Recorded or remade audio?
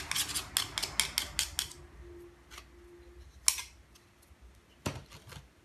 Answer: recorded